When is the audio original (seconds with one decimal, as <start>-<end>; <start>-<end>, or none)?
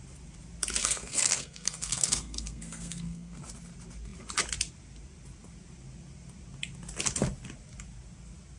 0.0-0.8; 3.4-8.6